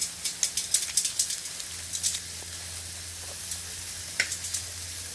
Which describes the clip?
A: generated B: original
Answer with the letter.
B